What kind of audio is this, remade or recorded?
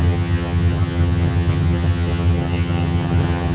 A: remade